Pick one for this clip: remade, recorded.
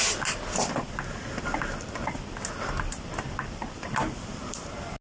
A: recorded